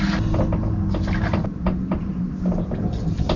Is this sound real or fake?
real